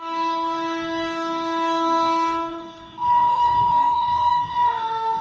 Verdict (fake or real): fake